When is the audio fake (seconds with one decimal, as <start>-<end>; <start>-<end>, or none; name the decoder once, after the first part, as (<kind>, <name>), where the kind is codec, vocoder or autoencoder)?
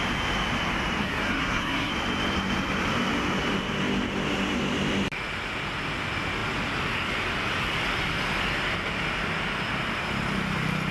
1.0-1.9 (codec, SNAC)